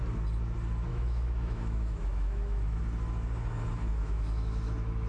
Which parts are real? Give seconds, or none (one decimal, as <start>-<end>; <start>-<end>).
0.0-0.9; 2.8-3.9